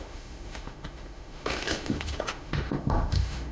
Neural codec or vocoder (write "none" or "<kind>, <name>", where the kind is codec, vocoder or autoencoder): autoencoder, DAC-VAE